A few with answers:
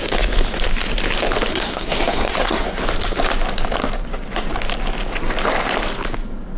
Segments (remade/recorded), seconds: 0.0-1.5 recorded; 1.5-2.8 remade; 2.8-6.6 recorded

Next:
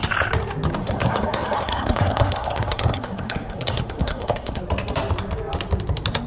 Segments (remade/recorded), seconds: 0.0-0.8 recorded; 0.8-4.6 remade; 4.6-6.3 recorded

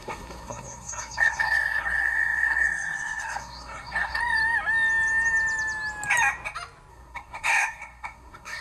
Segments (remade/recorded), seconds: 0.0-4.2 remade; 4.2-6.9 recorded; 6.9-8.6 remade

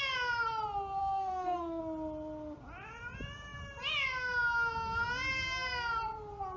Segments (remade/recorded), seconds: 0.0-1.0 recorded; 1.0-1.8 remade; 1.8-6.6 recorded

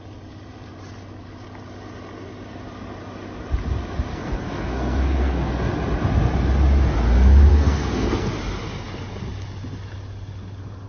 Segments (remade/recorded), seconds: 0.0-4.1 recorded; 4.1-5.5 remade; 5.5-7.5 recorded; 7.5-8.3 remade; 8.3-10.9 recorded

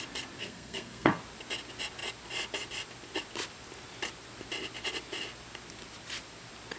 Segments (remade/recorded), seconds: 0.0-0.4 recorded; 0.4-1.2 remade; 1.2-6.8 recorded